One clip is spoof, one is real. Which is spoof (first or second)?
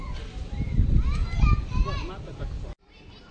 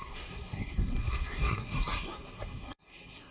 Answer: second